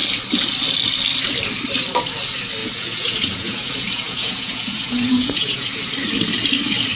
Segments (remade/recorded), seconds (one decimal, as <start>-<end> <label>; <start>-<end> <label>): 0.0-2.6 recorded; 2.6-5.7 remade; 5.7-7.0 recorded